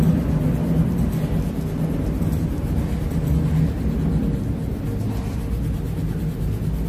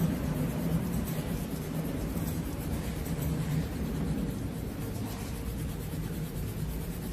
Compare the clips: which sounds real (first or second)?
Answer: first